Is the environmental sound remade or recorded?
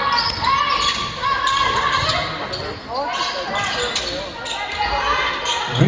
recorded